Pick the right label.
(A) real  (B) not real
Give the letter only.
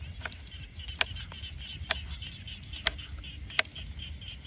A